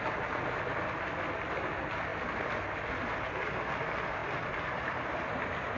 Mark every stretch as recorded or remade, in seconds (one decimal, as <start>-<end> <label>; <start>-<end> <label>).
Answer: 0.0-5.8 recorded